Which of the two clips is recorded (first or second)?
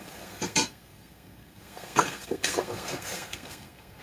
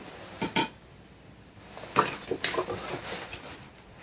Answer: second